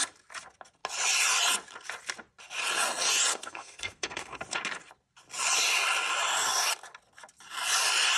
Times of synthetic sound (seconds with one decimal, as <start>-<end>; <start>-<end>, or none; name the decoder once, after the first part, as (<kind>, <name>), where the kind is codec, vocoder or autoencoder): 3.3-4.4 (codec, SNAC)